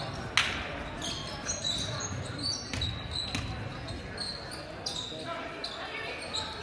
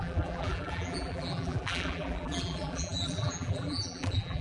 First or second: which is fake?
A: second